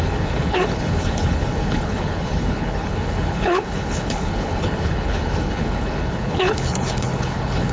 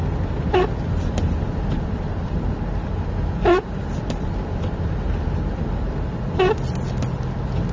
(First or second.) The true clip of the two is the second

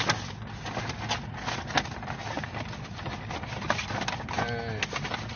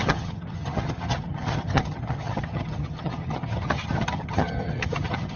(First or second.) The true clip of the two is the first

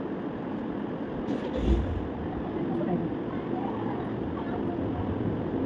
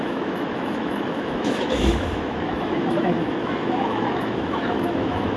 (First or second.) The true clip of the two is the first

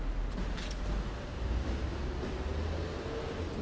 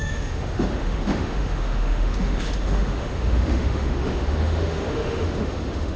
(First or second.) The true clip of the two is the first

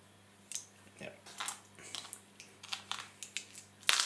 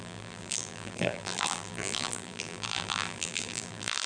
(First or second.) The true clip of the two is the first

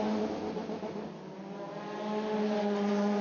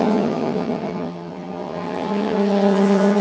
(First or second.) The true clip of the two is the first